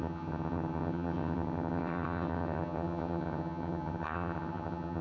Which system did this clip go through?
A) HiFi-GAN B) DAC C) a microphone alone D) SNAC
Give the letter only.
A